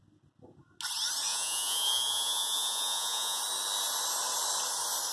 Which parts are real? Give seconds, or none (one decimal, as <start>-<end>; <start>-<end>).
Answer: 0.0-1.3; 3.4-5.1

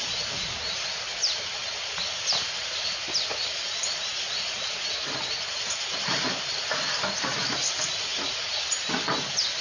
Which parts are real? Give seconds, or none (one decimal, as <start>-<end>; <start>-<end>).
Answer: 1.6-2.4; 8.1-9.0